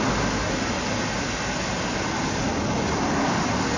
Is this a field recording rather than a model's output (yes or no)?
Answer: yes